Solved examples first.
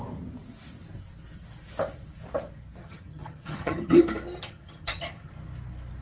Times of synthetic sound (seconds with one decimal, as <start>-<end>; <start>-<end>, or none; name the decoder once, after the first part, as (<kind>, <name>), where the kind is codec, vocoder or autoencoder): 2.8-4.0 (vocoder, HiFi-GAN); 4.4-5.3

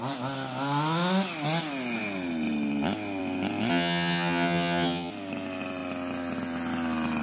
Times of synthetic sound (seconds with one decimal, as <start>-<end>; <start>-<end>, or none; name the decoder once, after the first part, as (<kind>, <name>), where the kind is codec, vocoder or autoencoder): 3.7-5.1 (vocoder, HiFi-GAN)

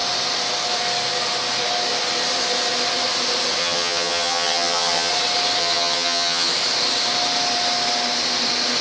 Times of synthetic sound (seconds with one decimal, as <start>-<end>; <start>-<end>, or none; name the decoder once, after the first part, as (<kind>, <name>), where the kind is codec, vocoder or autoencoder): 3.6-5.1 (vocoder, HiFi-GAN); 5.6-6.5

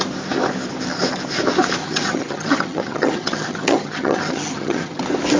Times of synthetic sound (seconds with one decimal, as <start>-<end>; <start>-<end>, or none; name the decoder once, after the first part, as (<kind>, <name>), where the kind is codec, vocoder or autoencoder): 1.8-5.0 (vocoder, HiFi-GAN)

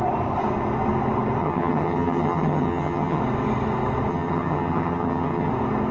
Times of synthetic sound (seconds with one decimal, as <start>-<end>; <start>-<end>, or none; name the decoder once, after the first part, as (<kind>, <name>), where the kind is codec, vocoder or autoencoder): 1.4-3.2 (vocoder, HiFi-GAN); 4.1-5.5

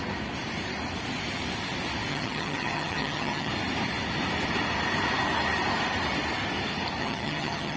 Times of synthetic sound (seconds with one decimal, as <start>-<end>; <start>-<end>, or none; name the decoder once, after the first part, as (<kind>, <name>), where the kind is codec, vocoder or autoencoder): 2.1-3.5 (vocoder, HiFi-GAN); 7.0-7.8

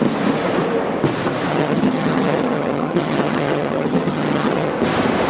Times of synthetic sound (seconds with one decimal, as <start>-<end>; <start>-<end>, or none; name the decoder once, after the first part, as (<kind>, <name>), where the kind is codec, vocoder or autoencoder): 1.5-4.7 (vocoder, HiFi-GAN)

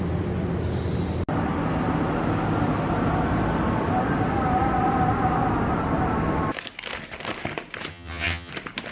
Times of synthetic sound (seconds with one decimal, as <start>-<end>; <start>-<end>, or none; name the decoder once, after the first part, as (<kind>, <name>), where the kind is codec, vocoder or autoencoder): 7.9-8.5 (vocoder, HiFi-GAN)